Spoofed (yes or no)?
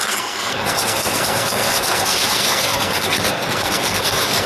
yes